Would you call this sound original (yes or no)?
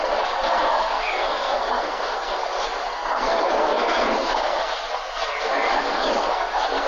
no